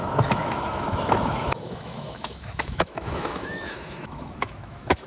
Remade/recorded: remade